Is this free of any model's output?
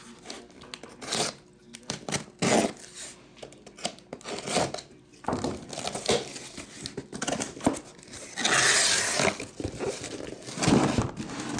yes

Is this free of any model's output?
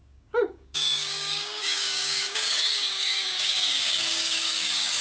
no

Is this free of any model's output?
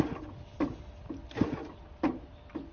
yes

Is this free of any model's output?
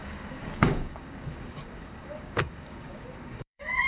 no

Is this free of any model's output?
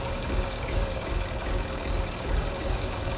no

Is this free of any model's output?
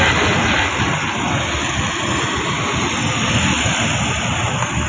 yes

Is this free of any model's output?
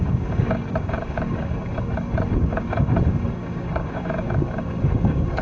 no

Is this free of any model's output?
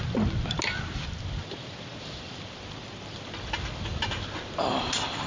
yes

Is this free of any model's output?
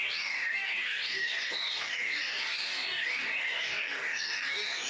no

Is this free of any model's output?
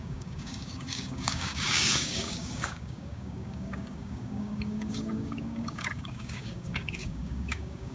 no